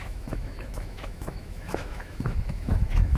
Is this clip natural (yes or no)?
no